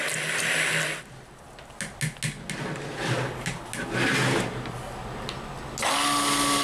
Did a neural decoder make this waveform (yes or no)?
no